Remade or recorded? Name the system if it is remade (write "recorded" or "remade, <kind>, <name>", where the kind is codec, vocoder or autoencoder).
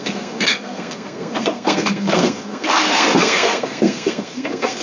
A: remade, codec, SNAC